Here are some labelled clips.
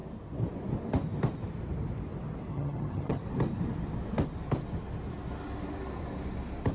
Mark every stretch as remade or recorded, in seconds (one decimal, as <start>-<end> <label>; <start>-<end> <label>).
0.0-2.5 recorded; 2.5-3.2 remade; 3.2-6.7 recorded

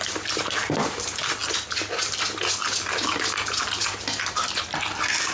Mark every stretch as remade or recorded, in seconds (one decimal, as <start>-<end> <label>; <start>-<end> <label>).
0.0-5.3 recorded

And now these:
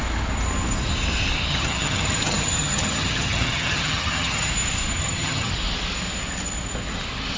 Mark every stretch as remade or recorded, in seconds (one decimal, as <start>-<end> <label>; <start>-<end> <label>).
0.0-1.5 recorded; 1.5-4.5 remade; 4.5-5.0 recorded; 5.0-5.5 remade; 5.5-7.4 recorded